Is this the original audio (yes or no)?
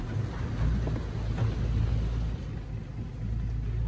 yes